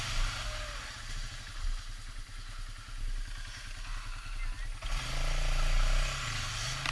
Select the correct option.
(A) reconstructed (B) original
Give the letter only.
B